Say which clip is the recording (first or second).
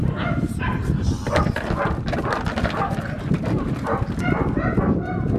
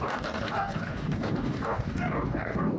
first